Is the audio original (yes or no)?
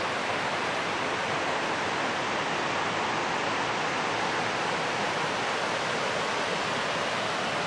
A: yes